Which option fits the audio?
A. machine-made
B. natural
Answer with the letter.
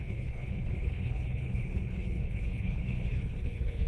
A